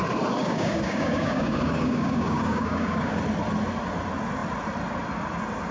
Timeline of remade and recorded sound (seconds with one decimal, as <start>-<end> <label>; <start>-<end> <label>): 0.0-0.4 recorded; 0.4-3.2 remade; 3.2-5.7 recorded